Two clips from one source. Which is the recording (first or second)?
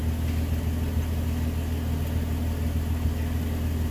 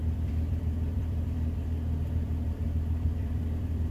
first